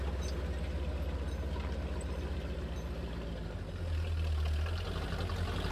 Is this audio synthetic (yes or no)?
no